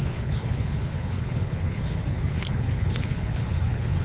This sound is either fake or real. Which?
fake